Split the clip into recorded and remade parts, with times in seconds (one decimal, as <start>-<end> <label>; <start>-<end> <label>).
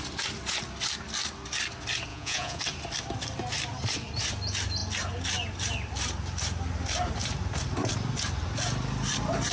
0.0-2.1 recorded; 2.1-2.6 remade; 2.6-9.5 recorded